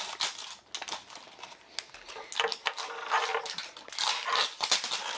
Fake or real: real